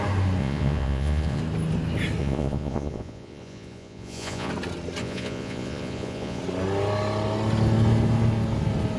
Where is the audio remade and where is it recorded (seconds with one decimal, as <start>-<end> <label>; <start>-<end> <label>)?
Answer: 0.0-0.4 recorded; 0.4-1.4 remade; 1.4-2.2 recorded; 2.2-4.5 remade; 4.5-5.0 recorded; 5.0-6.4 remade; 6.4-9.0 recorded